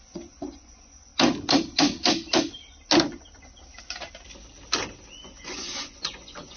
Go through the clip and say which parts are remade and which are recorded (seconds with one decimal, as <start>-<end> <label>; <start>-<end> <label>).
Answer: 0.0-1.1 remade; 1.1-5.1 recorded; 5.1-6.6 remade